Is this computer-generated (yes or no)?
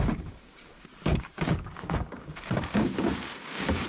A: yes